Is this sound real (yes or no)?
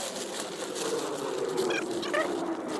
yes